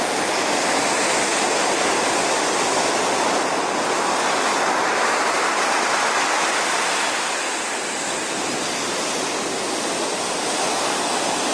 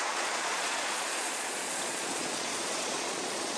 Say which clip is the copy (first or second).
second